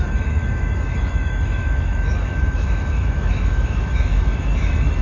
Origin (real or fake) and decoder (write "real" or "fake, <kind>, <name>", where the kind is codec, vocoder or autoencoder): fake, autoencoder, DAC-VAE